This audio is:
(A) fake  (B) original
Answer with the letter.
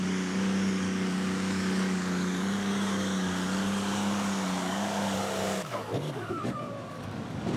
A